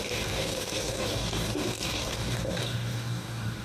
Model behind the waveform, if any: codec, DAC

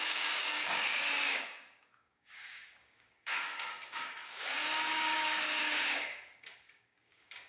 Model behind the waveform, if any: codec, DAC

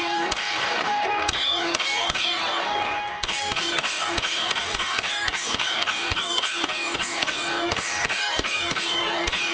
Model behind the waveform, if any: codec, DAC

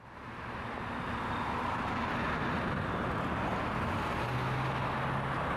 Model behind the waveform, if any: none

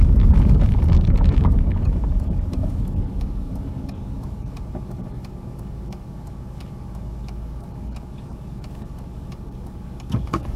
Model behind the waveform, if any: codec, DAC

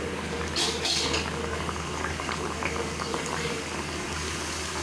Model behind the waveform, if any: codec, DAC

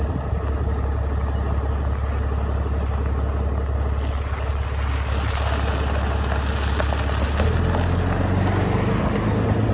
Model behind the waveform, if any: none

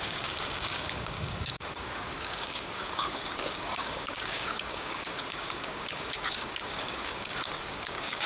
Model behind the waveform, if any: codec, DAC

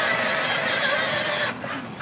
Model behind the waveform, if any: none